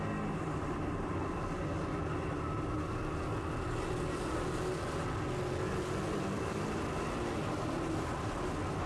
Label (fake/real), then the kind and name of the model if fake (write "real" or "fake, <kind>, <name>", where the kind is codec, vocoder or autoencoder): real